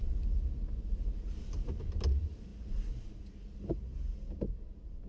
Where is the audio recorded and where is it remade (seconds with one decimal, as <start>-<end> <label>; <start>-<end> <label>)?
0.0-5.1 recorded

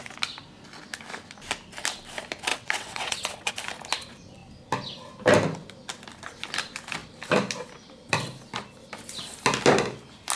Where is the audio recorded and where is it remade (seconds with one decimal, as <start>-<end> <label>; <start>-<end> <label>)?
0.0-2.5 recorded; 2.5-3.5 remade; 3.5-10.4 recorded

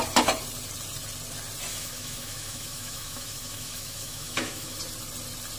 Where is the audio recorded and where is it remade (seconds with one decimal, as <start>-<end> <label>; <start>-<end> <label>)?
0.0-1.7 recorded; 1.7-4.8 remade; 4.8-5.6 recorded

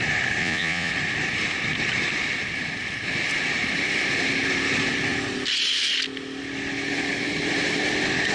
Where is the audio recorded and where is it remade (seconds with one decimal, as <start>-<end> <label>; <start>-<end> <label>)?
0.0-0.4 recorded; 0.4-0.9 remade; 0.9-8.3 recorded